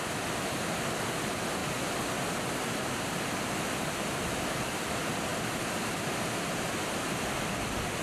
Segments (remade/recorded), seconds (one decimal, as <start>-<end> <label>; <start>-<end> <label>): 0.0-8.0 recorded